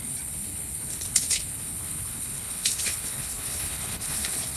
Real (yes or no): no